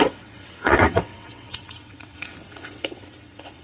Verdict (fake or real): fake